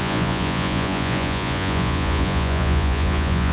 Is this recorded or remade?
remade